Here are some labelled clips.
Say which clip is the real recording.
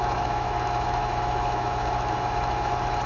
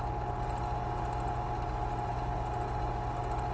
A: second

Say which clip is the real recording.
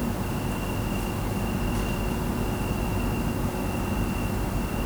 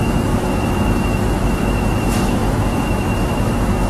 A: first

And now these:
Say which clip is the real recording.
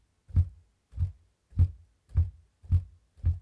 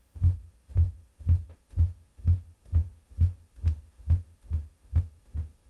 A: first